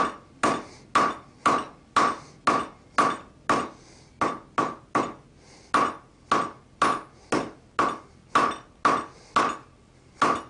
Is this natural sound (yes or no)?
yes